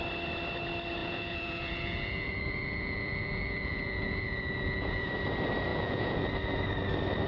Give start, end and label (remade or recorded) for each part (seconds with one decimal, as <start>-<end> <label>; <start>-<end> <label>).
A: 0.0-1.0 recorded; 1.0-5.1 remade; 5.1-5.7 recorded; 5.7-6.3 remade; 6.3-7.3 recorded